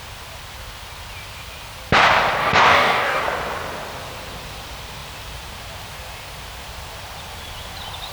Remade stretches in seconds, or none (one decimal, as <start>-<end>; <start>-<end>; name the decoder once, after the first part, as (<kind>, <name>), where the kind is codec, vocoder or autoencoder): 2.4-3.2 (codec, DAC)